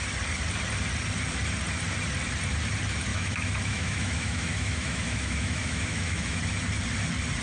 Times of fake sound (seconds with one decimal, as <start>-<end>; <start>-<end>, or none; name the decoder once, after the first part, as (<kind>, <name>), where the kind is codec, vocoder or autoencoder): 3.1-6.4 (autoencoder, DAC-VAE)